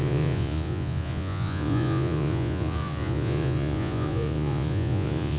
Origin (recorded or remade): remade